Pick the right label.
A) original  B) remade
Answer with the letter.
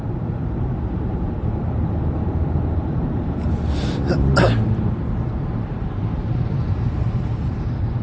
B